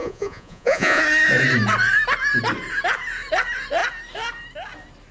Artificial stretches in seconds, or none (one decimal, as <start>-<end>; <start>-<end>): 0.0-1.0

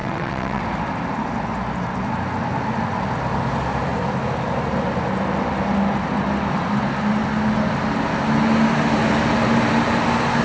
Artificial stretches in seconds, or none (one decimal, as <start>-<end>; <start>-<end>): 0.0-0.6

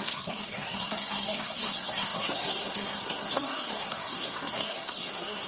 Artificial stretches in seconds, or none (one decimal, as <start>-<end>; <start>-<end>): 0.0-5.5